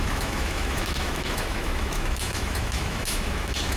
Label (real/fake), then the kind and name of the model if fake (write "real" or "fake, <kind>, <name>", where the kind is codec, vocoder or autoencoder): fake, autoencoder, DAC-VAE